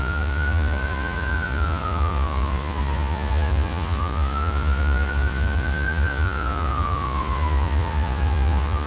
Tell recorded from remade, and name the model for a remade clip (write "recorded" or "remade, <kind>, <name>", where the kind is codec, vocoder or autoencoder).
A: remade, vocoder, Vocos